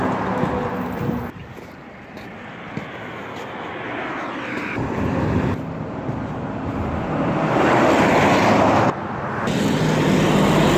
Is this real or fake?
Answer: real